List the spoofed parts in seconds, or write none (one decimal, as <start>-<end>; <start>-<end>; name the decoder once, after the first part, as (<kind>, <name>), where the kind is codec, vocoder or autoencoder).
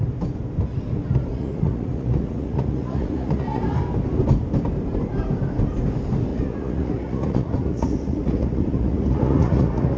1.3-3.6 (vocoder, Vocos); 6.3-10.0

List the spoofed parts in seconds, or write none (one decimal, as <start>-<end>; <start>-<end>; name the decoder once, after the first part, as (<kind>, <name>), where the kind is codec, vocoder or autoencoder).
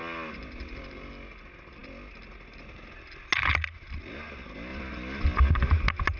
none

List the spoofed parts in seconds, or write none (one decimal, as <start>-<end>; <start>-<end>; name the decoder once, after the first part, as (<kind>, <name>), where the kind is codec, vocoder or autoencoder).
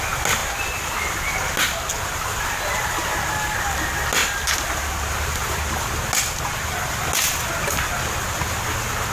none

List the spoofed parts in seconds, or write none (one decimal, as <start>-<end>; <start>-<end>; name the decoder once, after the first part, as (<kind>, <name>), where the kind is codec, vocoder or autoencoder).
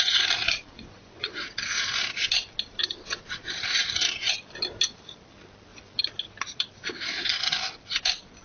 0.7-1.4 (vocoder, Vocos)